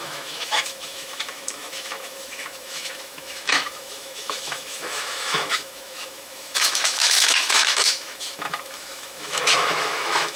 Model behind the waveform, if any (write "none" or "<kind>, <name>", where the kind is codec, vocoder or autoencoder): autoencoder, DAC-VAE